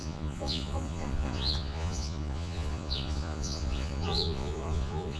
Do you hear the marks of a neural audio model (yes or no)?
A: yes